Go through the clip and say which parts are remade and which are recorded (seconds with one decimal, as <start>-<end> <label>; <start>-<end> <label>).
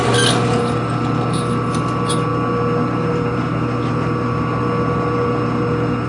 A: 0.0-6.1 recorded